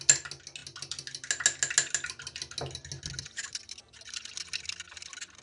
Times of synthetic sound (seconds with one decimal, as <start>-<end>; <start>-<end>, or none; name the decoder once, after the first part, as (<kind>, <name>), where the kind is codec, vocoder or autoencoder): none